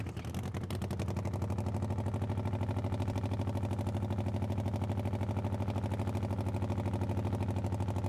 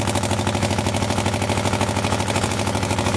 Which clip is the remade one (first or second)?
second